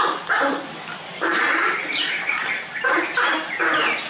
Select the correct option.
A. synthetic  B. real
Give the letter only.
A